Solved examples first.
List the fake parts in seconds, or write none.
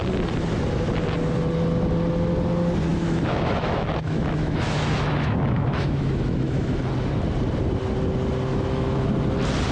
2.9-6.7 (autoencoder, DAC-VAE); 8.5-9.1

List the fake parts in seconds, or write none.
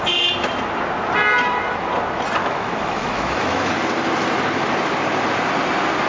2.4-3.7 (autoencoder, DAC-VAE)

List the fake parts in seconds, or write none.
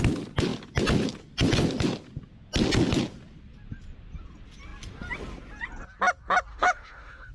6.5-7.3 (autoencoder, DAC-VAE)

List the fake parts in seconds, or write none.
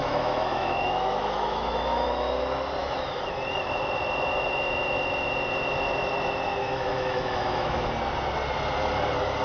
0.0-2.4 (autoencoder, DAC-VAE); 2.8-3.3; 6.6-7.9